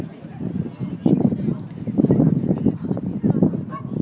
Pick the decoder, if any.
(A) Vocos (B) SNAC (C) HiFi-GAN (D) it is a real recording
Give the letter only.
D